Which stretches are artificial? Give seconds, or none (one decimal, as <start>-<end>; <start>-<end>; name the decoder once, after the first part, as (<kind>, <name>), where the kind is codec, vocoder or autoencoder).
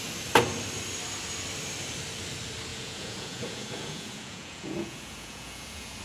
2.7-6.0 (vocoder, Vocos)